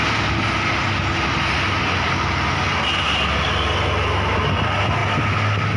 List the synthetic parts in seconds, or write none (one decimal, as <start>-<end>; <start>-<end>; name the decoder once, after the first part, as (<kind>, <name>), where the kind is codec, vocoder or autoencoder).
none